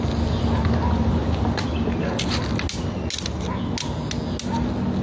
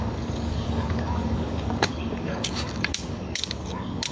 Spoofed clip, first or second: second